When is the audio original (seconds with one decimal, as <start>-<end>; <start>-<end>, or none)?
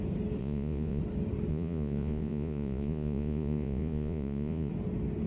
0.0-0.4; 1.0-1.5; 4.7-5.3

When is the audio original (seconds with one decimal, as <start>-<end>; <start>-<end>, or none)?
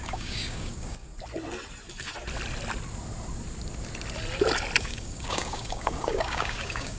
1.1-4.8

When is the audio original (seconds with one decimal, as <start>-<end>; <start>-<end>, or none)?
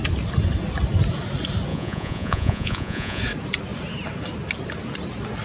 0.0-1.7; 3.2-5.4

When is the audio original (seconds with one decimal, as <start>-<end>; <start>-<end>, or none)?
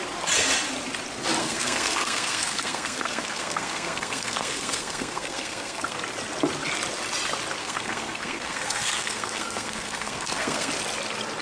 0.0-1.4; 6.0-7.6; 10.7-11.4